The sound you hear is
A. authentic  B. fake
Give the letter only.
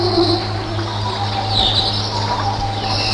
A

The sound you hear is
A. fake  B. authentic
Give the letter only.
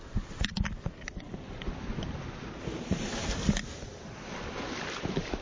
B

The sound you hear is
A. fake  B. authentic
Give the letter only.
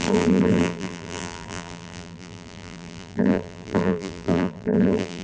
A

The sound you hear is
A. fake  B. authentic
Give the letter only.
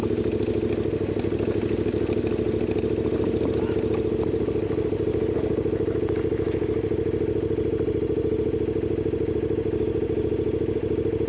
B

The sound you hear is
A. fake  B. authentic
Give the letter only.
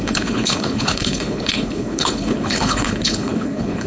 A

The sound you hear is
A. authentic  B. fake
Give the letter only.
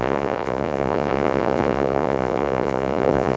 B